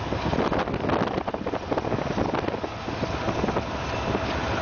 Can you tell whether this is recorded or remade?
recorded